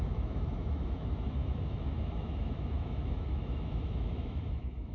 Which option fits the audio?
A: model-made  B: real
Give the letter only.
A